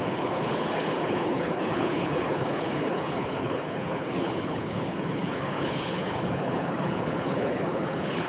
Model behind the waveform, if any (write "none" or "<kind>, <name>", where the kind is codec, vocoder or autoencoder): codec, HILCodec